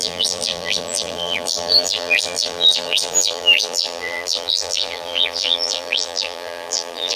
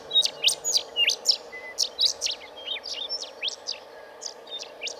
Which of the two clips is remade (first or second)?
first